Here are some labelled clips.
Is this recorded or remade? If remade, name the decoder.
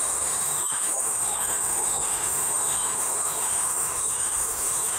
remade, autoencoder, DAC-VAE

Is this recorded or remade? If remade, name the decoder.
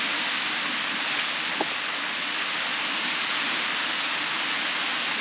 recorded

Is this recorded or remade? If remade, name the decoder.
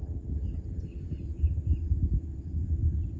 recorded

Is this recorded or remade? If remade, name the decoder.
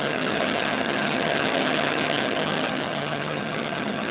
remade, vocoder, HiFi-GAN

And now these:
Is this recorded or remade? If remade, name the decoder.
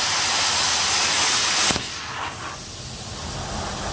recorded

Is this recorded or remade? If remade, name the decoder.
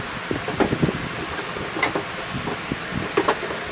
recorded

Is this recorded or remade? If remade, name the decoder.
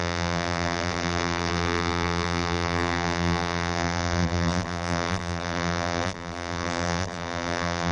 remade, vocoder, BigVGAN v2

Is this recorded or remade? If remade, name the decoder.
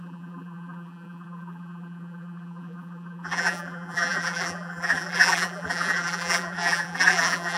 remade, vocoder, BigVGAN v2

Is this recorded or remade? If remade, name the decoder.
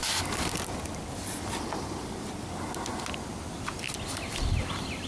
recorded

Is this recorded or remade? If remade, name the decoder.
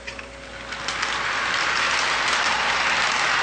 recorded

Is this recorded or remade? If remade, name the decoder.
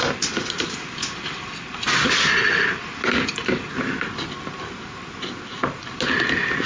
recorded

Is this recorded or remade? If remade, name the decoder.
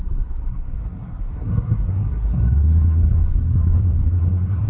remade, codec, SNAC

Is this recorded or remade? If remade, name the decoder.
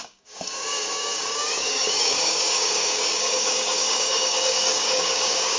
remade, codec, DAC